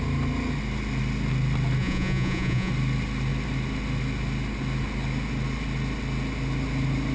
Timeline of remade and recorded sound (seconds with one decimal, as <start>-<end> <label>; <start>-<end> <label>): 0.0-1.8 recorded; 1.8-2.7 remade; 2.7-7.1 recorded